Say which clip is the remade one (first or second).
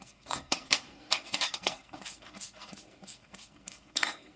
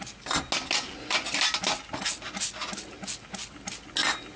first